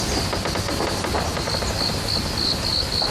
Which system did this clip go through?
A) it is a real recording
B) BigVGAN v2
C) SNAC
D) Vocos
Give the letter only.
A